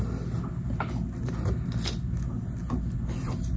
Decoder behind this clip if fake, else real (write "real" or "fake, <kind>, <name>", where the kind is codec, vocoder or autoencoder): real